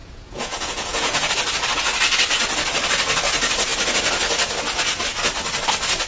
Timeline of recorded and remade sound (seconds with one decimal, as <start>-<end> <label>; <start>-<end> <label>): 0.0-1.3 remade; 1.3-6.1 recorded